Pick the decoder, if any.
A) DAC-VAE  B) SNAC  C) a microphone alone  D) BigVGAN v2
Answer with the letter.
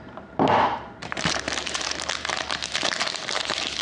D